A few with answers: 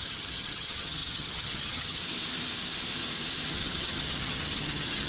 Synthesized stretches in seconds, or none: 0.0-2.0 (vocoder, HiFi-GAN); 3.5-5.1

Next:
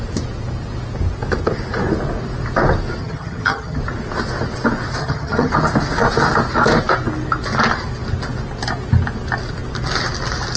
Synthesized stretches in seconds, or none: 3.0-3.8 (vocoder, HiFi-GAN); 5.0-5.5

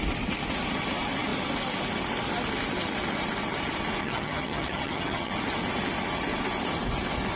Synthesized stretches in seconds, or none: 4.0-5.3 (vocoder, HiFi-GAN)

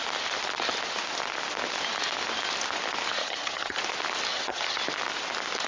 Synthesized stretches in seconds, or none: 3.2-3.8 (vocoder, HiFi-GAN); 4.3-4.8

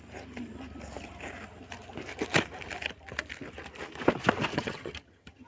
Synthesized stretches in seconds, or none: 4.5-5.5 (vocoder, HiFi-GAN)